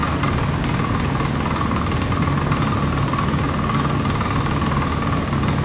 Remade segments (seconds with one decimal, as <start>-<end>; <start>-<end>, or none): none